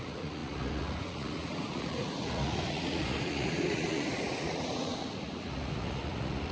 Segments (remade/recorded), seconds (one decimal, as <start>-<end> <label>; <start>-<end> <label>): 0.0-6.5 remade